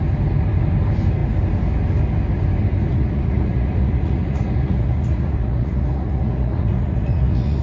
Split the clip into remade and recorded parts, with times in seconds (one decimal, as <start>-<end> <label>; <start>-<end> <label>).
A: 0.0-2.9 recorded; 2.9-7.6 remade